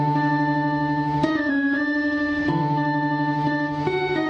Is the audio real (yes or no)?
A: no